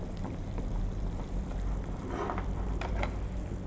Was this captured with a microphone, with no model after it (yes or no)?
no